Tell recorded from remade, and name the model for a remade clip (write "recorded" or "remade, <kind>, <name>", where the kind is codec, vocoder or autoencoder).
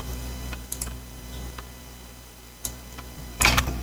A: remade, vocoder, BigVGAN v2